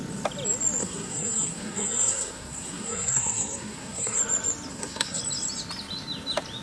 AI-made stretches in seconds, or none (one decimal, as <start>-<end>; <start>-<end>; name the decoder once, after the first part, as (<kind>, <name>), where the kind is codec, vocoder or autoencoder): 0.8-4.2 (codec, SNAC); 4.7-5.2

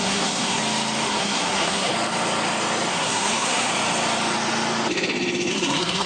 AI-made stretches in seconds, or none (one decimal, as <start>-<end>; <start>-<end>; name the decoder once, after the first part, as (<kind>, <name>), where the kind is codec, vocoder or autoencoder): 0.0-0.6 (codec, SNAC); 1.1-1.9; 2.9-3.7; 5.5-6.1